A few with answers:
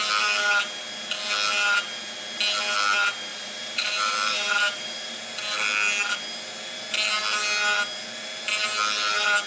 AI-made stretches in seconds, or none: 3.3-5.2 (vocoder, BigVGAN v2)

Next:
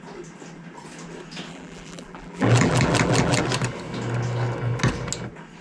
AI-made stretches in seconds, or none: 1.5-3.4 (vocoder, BigVGAN v2)

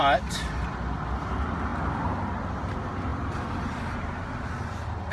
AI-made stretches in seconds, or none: 3.1-3.9 (vocoder, BigVGAN v2)

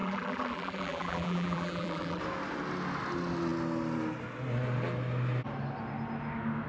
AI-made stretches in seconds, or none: 0.0-2.2 (vocoder, BigVGAN v2)

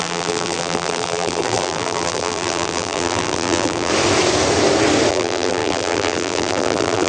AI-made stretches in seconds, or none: 0.0-3.9 (vocoder, BigVGAN v2); 5.1-7.1

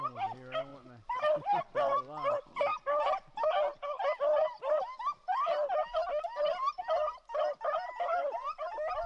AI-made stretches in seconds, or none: 0.7-1.6 (vocoder, BigVGAN v2)

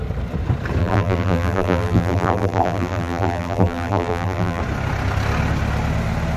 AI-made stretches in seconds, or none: 0.8-4.6 (vocoder, BigVGAN v2)